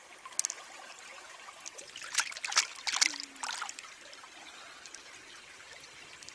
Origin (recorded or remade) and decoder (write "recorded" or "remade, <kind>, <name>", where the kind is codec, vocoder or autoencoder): recorded